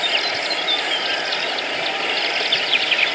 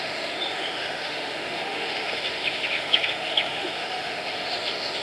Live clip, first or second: first